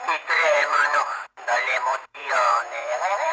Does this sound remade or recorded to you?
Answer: remade